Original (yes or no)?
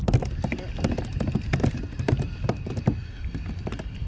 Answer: yes